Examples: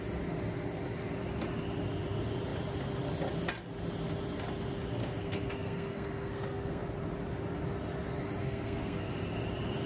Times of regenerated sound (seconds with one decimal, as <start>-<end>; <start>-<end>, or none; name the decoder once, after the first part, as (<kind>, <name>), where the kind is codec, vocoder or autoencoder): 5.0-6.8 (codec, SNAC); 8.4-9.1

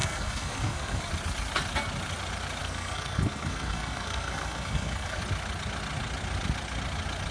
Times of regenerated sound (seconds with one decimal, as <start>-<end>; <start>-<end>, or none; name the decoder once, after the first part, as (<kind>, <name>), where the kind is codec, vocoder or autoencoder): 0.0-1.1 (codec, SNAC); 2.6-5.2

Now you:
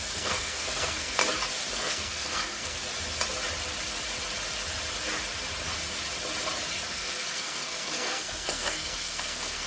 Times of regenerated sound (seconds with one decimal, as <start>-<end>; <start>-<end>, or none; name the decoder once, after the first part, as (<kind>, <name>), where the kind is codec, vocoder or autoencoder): 0.0-1.2 (codec, SNAC); 1.7-2.8; 6.9-9.7

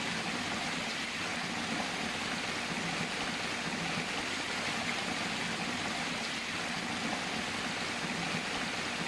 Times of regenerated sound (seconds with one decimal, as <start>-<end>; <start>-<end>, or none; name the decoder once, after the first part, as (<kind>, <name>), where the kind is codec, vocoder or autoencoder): none